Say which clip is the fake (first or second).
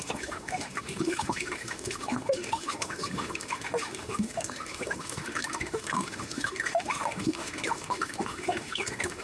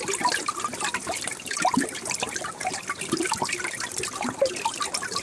first